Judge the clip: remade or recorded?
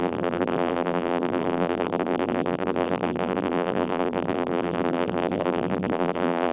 remade